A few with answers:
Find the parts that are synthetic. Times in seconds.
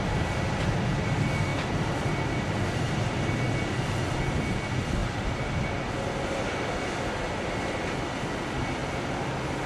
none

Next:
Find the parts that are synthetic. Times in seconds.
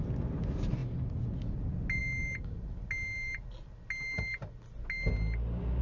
none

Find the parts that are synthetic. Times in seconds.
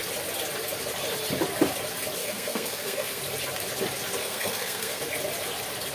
2.2-3.2 (codec, SNAC); 4.2-5.0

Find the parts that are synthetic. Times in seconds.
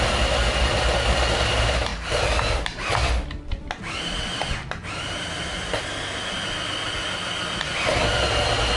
none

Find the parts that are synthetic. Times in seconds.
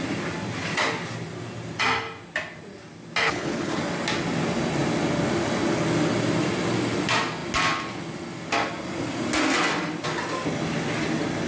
3.2-3.8 (codec, HILCodec)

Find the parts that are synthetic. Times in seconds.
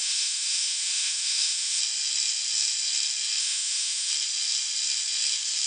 0.0-1.8 (autoencoder, DAC-VAE); 3.4-4.1